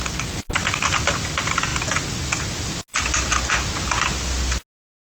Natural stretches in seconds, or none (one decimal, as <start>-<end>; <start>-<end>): 0.0-5.2